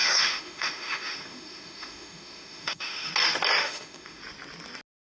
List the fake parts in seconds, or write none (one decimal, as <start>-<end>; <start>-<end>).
0.0-3.1; 3.6-4.2